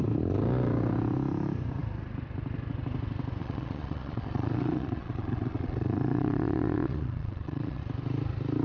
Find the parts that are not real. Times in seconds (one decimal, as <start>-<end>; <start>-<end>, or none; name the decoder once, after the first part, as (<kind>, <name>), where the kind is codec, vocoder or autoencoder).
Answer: 3.4-7.8 (vocoder, Vocos)